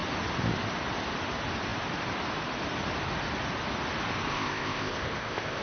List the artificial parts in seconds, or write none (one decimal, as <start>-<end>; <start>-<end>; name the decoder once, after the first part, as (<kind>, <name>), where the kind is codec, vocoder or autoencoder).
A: 4.3-5.6 (codec, ZipCodec)